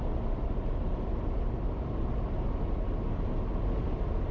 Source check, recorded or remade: recorded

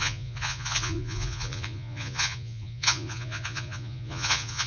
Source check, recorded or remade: remade